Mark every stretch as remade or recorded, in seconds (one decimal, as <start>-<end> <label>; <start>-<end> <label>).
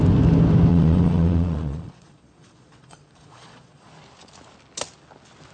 0.0-0.7 recorded; 0.7-3.9 remade; 3.9-5.5 recorded